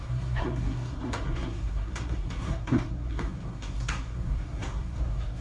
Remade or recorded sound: remade